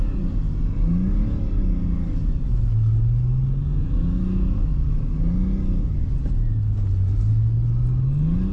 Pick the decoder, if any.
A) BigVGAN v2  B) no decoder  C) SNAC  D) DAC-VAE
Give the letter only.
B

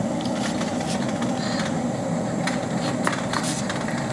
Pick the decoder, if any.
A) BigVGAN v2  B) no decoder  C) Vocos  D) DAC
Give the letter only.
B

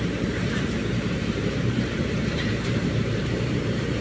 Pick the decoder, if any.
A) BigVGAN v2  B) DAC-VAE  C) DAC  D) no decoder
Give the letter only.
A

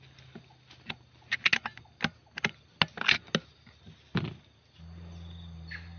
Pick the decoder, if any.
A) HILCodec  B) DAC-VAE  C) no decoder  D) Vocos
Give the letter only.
C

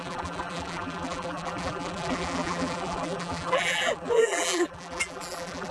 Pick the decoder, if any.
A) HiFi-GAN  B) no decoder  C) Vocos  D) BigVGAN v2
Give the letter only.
D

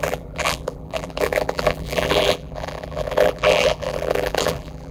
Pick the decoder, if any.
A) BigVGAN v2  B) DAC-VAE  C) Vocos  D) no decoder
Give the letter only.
A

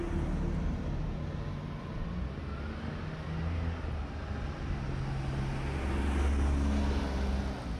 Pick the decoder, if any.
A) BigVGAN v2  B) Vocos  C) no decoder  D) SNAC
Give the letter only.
C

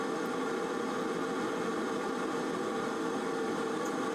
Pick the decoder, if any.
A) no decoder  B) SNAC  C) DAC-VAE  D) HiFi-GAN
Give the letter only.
A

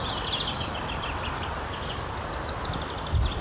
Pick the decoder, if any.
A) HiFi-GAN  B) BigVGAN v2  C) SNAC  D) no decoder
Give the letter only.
D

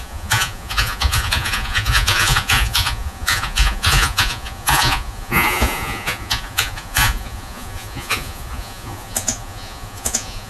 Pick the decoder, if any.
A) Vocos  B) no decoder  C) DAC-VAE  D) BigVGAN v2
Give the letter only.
A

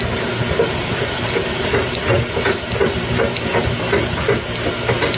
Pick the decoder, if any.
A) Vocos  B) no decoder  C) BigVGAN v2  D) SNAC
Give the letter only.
B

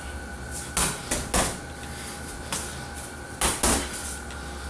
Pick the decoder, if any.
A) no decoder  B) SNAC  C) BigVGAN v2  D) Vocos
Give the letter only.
A